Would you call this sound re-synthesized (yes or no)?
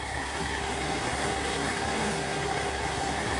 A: yes